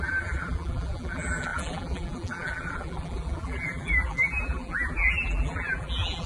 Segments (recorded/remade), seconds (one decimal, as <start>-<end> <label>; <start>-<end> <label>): 0.0-6.3 remade